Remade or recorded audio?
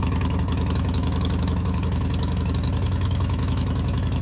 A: remade